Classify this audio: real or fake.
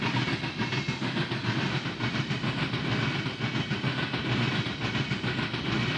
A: real